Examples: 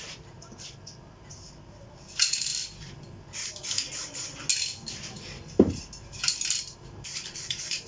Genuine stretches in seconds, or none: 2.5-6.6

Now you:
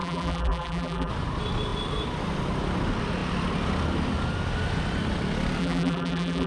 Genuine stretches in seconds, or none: 1.1-5.6

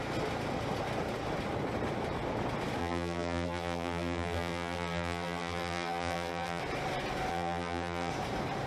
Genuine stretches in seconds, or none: 0.0-2.8; 6.6-7.3; 8.1-8.7

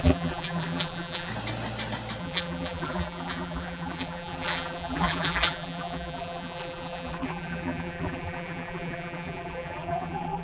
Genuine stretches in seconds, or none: 1.3-2.2

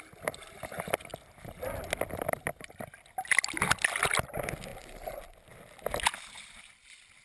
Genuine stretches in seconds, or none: 0.0-7.2

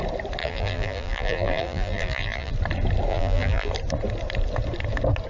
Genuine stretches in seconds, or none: 0.0-0.4; 2.5-3.1; 3.7-5.3